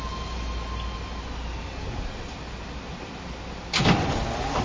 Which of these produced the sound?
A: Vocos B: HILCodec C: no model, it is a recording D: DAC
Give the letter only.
C